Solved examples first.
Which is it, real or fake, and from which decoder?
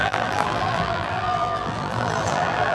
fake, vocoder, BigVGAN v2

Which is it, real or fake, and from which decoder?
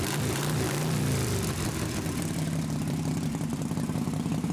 fake, vocoder, BigVGAN v2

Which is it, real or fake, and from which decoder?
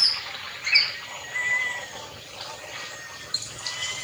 real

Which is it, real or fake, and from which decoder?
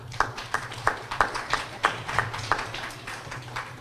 fake, vocoder, BigVGAN v2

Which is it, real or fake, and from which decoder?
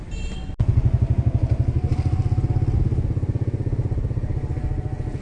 real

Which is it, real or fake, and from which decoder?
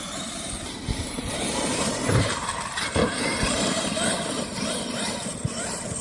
fake, vocoder, BigVGAN v2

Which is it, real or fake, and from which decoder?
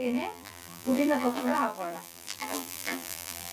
fake, vocoder, BigVGAN v2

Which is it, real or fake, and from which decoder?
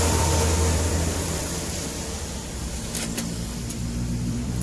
fake, vocoder, BigVGAN v2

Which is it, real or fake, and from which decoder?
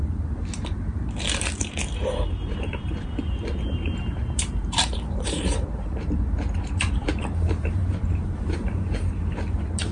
fake, vocoder, BigVGAN v2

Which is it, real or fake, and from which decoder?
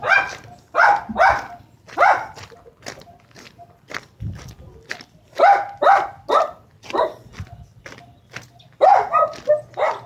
real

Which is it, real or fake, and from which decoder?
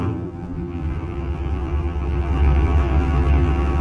fake, vocoder, BigVGAN v2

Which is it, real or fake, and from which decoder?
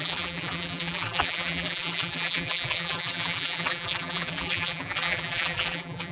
fake, vocoder, BigVGAN v2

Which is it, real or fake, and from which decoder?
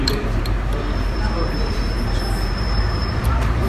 fake, vocoder, BigVGAN v2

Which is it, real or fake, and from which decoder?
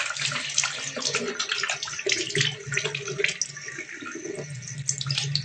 real